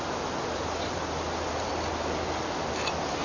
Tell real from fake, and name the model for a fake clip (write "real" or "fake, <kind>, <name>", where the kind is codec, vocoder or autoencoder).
real